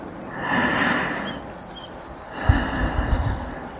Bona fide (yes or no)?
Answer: yes